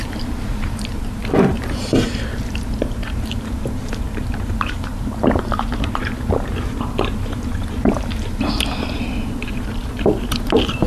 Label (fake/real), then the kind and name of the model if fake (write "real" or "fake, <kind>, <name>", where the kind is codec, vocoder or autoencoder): fake, vocoder, BigVGAN v2